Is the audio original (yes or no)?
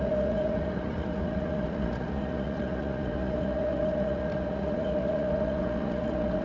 no